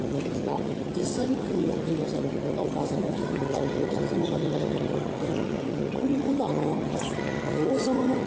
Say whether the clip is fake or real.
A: fake